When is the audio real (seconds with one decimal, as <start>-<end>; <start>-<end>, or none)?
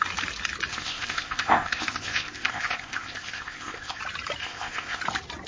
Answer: 0.0-0.7; 4.0-4.4; 5.0-5.5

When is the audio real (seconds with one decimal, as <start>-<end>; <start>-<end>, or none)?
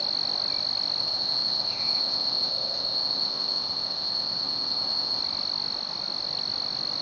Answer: 0.0-1.0; 5.2-7.0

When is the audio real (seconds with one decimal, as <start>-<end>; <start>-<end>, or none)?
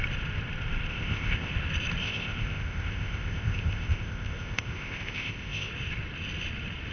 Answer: 0.0-0.9; 1.5-2.0; 5.7-6.9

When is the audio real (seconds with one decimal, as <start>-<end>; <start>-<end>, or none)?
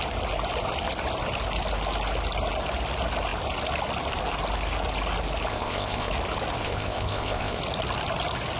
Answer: 0.0-5.5; 6.1-6.6; 7.6-8.6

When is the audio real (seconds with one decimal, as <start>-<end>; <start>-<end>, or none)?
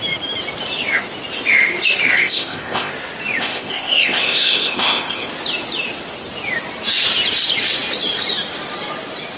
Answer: 0.0-2.2; 2.9-3.4; 5.3-9.4